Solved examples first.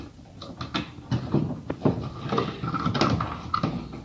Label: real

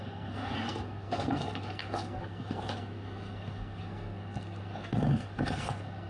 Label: fake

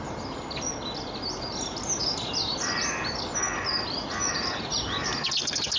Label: real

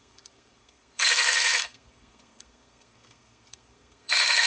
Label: fake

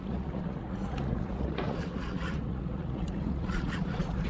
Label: fake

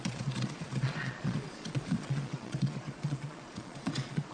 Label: fake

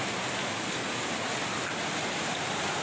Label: real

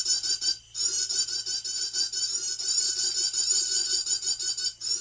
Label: real